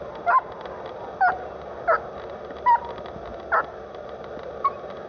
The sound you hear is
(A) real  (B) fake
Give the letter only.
A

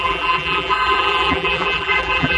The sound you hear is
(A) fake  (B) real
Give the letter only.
A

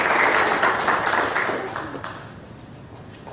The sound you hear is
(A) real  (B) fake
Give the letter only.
A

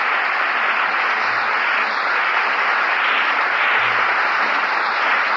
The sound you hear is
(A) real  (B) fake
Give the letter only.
A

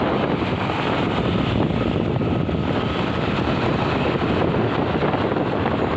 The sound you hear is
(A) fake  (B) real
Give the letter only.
B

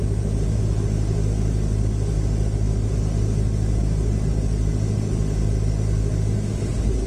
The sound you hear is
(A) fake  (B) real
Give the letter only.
B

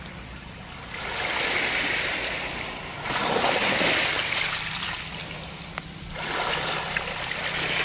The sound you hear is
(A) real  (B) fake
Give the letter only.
A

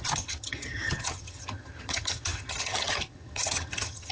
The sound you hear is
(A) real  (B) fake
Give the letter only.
B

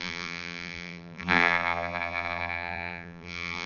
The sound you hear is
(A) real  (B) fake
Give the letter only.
B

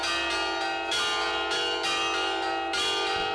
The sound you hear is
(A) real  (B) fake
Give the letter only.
A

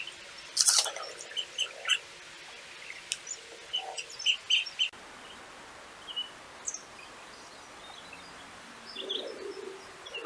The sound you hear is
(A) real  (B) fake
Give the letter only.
A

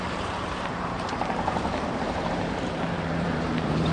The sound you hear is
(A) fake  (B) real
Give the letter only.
A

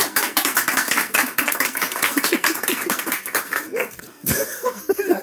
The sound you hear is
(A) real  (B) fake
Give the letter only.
B